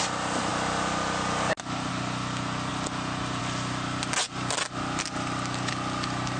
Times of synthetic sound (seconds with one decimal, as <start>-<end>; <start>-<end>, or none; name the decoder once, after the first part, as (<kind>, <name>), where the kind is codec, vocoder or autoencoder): none